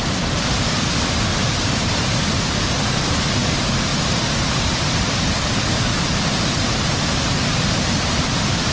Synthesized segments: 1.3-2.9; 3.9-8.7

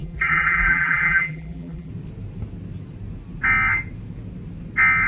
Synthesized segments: 0.0-1.9

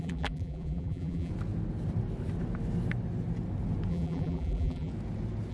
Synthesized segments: 0.0-1.3; 3.9-4.9

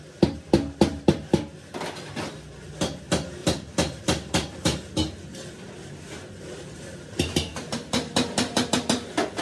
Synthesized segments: 3.4-4.3

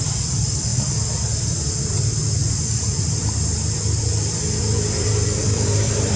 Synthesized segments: 0.0-6.2